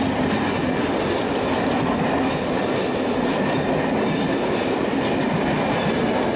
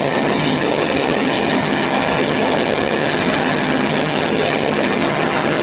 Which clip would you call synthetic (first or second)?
second